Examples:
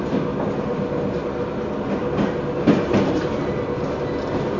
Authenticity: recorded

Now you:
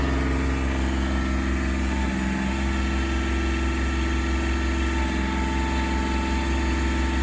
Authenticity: recorded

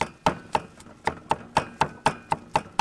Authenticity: recorded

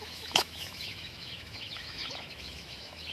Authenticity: remade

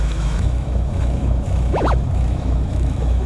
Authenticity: remade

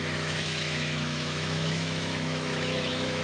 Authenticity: remade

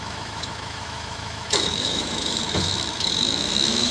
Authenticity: remade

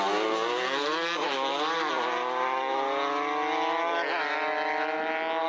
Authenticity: recorded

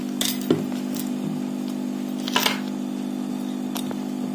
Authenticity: recorded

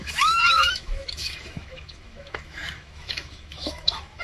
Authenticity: remade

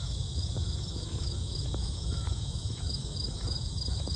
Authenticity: remade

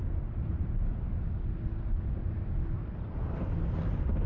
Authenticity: recorded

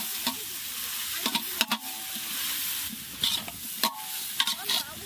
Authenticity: recorded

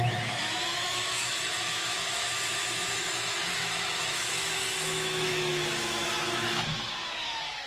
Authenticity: remade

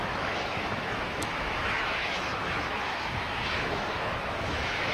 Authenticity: remade